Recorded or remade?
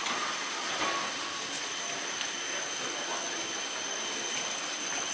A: recorded